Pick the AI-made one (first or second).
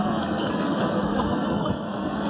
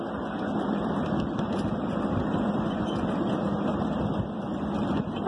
first